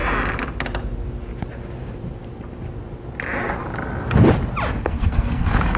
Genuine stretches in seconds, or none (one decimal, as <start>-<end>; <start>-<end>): 0.0-4.8